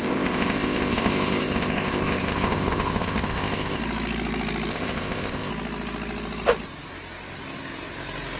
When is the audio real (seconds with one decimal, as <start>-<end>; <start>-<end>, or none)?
3.8-4.7; 5.5-8.4